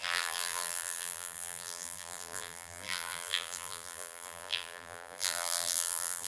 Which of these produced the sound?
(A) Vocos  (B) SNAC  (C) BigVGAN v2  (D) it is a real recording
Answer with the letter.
C